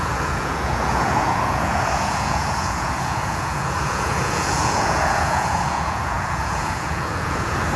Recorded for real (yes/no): no